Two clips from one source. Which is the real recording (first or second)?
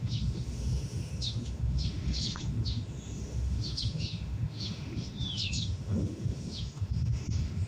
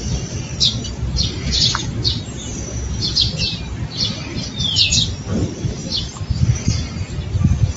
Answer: second